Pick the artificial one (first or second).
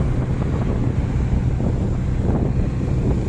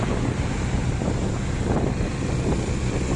second